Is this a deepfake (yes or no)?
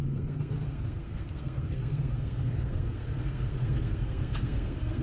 yes